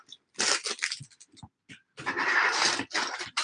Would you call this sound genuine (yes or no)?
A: no